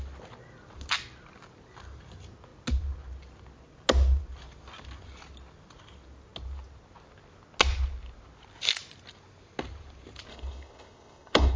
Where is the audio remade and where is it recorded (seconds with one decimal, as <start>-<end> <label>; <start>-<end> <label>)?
0.0-10.3 recorded; 10.3-11.6 remade